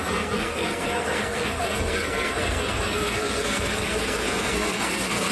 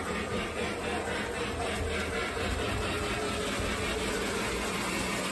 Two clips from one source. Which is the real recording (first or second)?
second